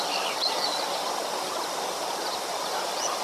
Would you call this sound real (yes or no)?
yes